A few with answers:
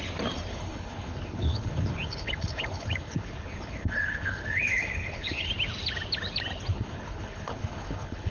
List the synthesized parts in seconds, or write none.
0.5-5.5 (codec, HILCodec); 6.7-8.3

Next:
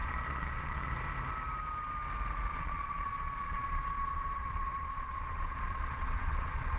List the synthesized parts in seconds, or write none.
0.0-0.9 (vocoder, Vocos); 2.5-6.8